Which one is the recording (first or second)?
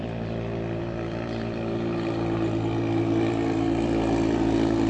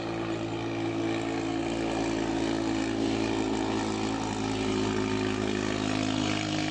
second